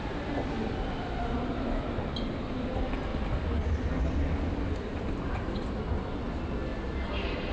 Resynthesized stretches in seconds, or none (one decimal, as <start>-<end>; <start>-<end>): none

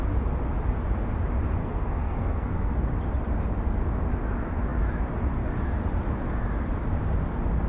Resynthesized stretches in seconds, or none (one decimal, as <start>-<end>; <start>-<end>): 1.6-2.8

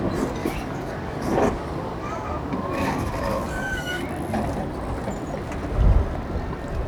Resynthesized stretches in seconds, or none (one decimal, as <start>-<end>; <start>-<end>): 0.4-4.0

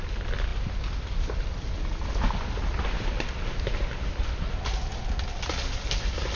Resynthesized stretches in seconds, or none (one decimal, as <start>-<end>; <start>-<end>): none

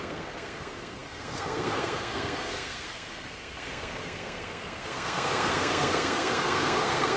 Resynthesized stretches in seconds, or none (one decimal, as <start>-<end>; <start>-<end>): 0.0-7.2

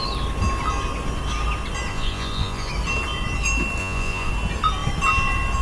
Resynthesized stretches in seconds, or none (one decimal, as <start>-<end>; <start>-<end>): 1.9-2.7; 3.8-4.3

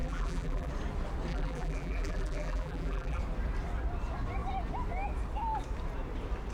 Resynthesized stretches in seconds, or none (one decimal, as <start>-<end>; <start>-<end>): 0.0-0.7; 1.3-3.2